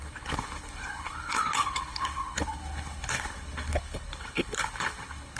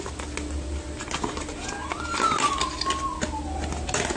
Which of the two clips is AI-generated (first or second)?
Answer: first